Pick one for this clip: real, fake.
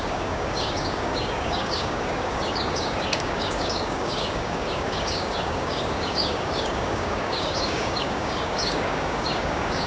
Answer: fake